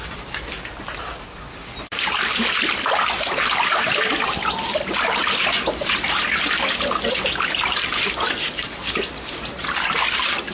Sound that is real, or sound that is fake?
real